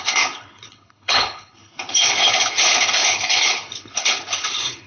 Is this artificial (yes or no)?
yes